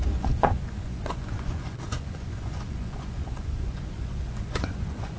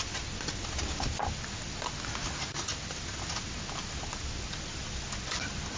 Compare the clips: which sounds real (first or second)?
second